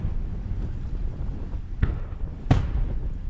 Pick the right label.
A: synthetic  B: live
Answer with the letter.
B